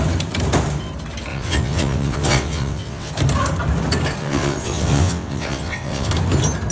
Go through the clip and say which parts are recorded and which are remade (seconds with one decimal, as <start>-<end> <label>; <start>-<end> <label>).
0.0-1.3 recorded; 1.3-3.1 remade; 3.1-4.2 recorded; 4.2-6.1 remade; 6.1-6.7 recorded